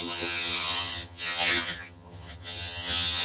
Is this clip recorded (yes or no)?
no